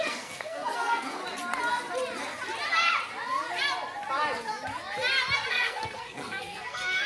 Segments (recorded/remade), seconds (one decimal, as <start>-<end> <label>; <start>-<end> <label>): 0.0-1.2 remade; 1.2-5.5 recorded; 5.5-7.1 remade